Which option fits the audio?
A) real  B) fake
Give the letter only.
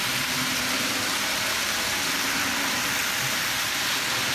A